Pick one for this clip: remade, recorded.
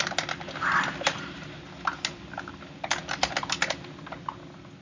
recorded